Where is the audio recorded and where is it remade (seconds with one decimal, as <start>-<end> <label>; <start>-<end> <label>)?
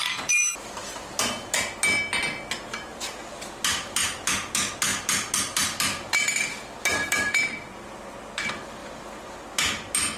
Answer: 0.0-10.2 recorded